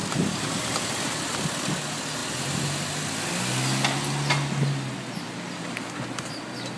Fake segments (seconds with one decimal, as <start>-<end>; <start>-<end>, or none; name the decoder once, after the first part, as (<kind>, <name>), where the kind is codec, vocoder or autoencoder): none